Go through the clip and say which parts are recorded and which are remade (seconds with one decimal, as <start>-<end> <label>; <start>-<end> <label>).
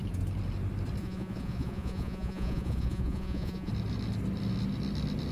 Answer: 0.0-1.0 recorded; 1.0-3.7 remade; 3.7-5.3 recorded